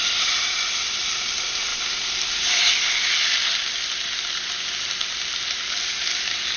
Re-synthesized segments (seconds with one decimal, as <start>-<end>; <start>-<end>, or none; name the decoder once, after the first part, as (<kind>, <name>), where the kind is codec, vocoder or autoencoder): 0.0-1.7 (vocoder, BigVGAN v2); 5.5-6.6